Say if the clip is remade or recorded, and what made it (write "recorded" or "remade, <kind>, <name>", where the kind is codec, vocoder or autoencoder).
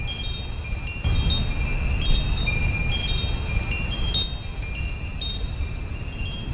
recorded